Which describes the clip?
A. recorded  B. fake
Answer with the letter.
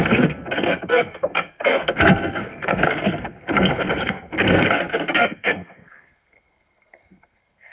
B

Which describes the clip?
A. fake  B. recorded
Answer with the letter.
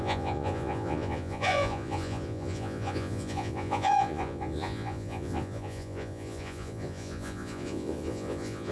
A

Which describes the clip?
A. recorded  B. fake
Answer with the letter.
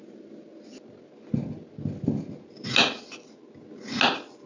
A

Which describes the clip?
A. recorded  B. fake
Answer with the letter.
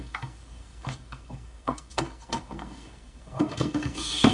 B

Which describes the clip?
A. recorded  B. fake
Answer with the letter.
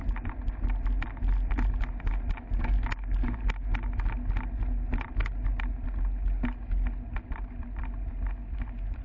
A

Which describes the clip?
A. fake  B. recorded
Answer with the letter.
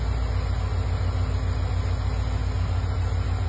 B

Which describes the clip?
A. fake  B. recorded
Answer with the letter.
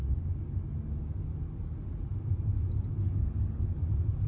B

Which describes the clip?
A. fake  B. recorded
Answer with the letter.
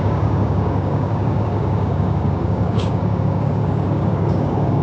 A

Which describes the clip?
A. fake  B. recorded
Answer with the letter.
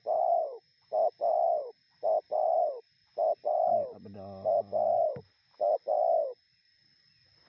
B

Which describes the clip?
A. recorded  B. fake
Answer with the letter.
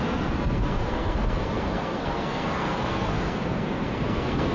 B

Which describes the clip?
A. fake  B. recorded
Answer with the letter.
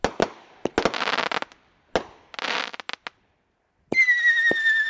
B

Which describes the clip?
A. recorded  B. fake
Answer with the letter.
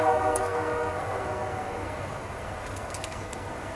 B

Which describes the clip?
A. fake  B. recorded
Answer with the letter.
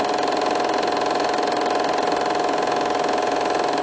B